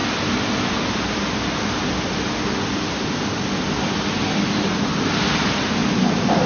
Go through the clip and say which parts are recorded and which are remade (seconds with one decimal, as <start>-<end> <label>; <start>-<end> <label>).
0.0-6.5 recorded